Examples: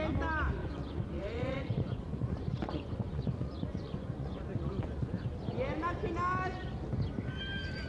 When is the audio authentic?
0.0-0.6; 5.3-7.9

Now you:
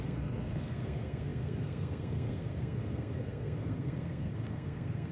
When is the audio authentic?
none